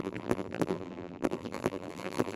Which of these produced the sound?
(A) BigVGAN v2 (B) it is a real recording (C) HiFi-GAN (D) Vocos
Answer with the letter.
A